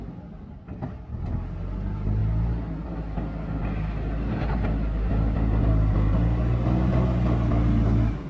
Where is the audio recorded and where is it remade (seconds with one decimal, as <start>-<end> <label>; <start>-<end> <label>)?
0.0-8.3 recorded